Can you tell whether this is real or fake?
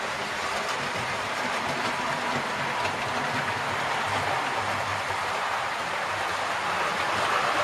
real